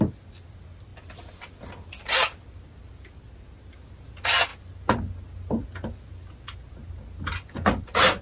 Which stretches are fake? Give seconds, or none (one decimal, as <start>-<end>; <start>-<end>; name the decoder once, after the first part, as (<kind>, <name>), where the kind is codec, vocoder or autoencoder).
none